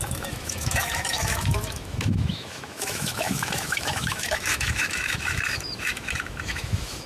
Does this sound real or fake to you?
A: fake